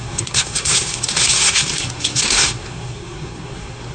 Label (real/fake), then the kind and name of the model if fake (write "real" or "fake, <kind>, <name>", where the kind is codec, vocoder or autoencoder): fake, codec, SNAC